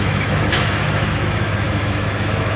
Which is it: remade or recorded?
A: remade